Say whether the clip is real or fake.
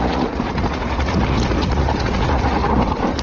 fake